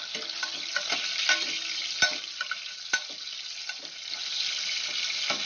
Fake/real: real